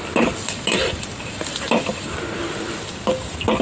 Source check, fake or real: real